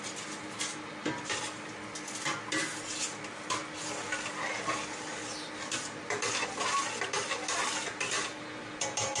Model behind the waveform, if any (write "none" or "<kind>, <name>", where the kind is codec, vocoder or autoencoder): none